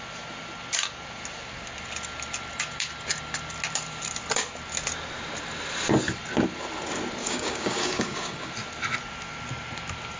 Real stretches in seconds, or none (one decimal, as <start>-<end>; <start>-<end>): 0.0-7.2; 8.5-10.2